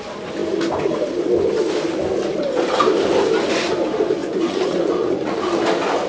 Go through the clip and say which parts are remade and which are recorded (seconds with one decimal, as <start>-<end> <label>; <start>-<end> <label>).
0.0-4.2 recorded; 4.2-5.3 remade; 5.3-6.1 recorded